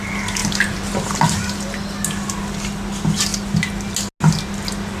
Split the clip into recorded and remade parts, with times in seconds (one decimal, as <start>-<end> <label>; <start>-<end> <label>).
0.0-0.4 recorded; 0.4-1.2 remade; 1.2-5.0 recorded

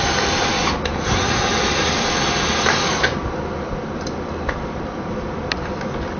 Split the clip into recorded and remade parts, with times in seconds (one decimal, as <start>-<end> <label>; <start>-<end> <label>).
0.0-3.2 recorded; 3.2-5.1 remade; 5.1-6.2 recorded